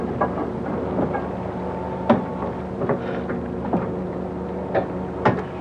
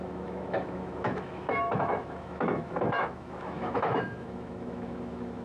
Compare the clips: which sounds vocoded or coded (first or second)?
second